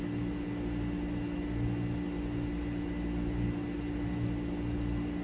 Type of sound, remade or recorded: recorded